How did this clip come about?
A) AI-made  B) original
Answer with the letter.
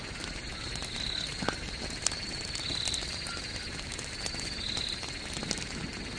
B